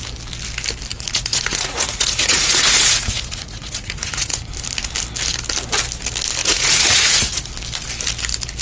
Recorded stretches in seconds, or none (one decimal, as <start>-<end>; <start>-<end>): 0.0-0.9; 4.5-6.4; 7.5-8.6